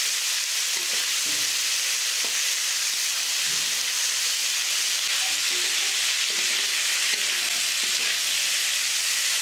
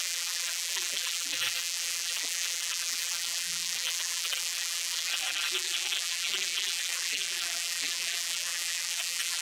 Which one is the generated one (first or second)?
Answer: second